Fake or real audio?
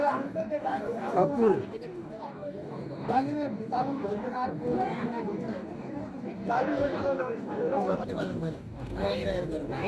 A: fake